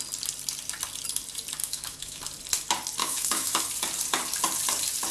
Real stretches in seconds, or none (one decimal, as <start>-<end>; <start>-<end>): 0.0-1.6; 2.2-3.0; 3.6-5.1